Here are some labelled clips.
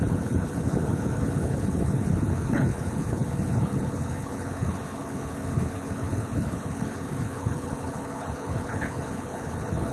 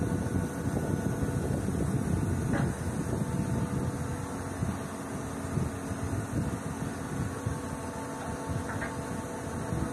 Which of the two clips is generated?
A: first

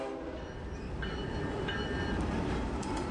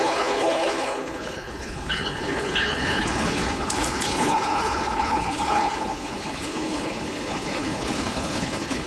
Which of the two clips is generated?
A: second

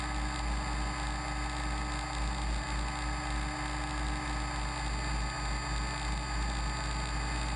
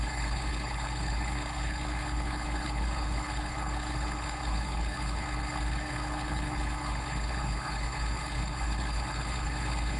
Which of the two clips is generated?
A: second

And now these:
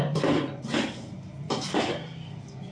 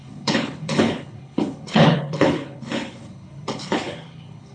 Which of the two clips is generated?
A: second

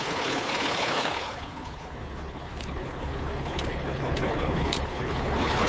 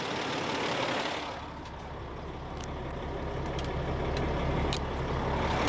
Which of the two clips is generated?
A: first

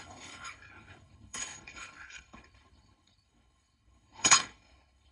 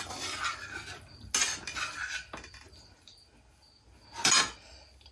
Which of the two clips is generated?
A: first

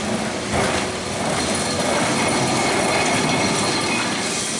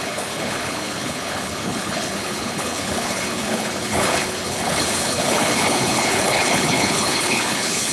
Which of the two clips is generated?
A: second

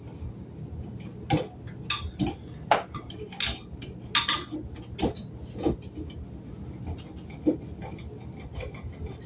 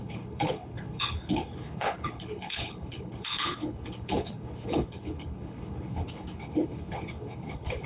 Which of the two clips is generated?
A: second